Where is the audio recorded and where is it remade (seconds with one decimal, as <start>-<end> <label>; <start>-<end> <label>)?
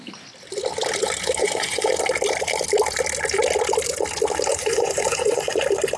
0.0-1.4 recorded; 1.4-1.9 remade; 1.9-4.5 recorded; 4.5-5.6 remade; 5.6-6.0 recorded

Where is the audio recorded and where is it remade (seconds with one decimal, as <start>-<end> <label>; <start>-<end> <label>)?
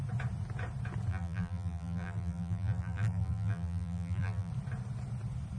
0.0-1.1 recorded; 1.1-4.5 remade; 4.5-5.6 recorded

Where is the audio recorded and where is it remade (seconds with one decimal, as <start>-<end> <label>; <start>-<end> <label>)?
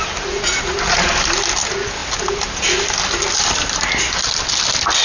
0.0-5.0 recorded